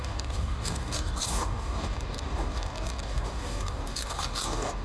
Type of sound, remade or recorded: remade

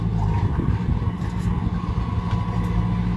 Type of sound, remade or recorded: recorded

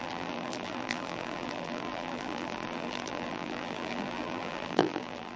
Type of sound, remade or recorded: remade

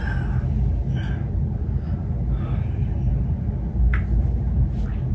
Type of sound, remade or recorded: recorded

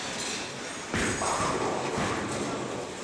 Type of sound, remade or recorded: recorded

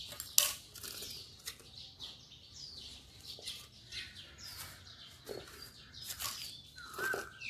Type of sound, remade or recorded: recorded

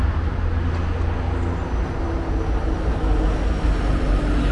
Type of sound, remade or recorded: recorded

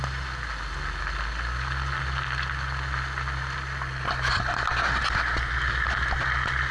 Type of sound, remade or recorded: recorded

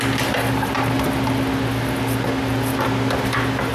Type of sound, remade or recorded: recorded